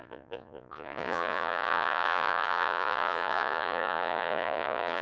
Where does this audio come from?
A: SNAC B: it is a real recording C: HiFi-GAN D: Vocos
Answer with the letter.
D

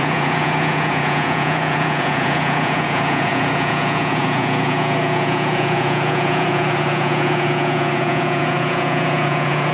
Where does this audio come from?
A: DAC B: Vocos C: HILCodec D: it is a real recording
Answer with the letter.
B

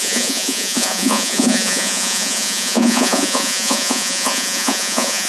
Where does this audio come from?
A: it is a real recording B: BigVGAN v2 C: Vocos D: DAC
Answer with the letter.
C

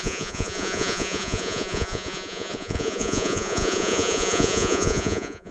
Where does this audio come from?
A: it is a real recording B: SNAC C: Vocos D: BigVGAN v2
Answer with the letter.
C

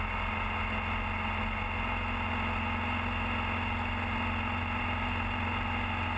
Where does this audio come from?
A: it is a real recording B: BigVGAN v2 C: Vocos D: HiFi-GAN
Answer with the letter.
A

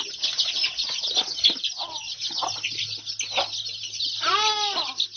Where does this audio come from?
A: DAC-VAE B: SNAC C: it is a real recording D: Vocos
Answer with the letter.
C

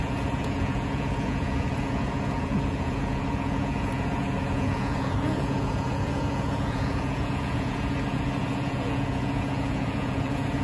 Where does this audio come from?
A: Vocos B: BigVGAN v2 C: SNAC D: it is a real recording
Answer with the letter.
A